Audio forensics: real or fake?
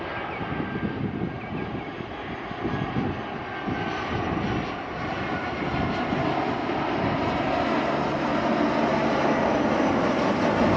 real